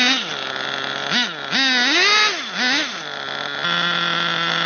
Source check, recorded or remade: recorded